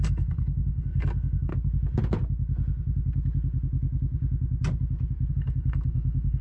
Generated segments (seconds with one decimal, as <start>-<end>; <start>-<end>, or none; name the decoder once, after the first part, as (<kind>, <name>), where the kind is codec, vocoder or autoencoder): 0.0-1.5 (codec, SNAC); 5.3-6.4